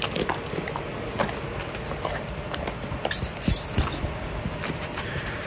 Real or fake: real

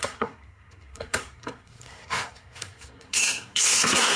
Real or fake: fake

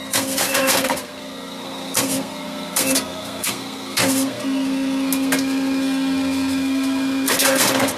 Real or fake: fake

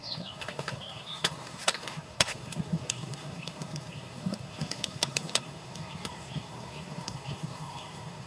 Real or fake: fake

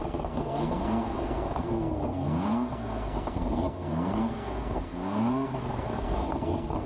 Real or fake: fake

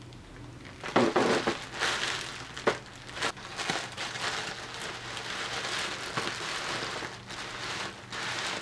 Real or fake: real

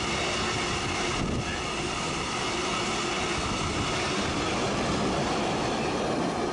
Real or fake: real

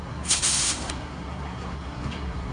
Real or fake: fake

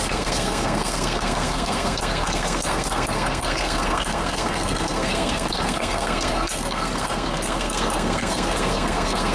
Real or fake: fake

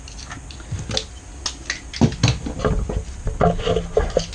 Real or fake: real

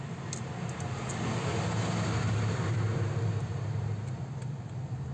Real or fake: real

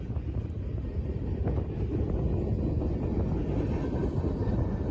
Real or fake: real